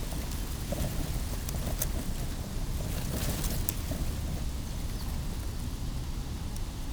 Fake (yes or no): no